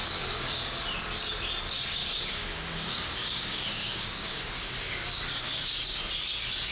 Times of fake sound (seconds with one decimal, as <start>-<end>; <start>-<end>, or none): 0.0-0.8; 2.0-6.0